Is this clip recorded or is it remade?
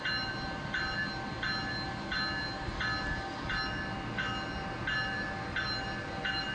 recorded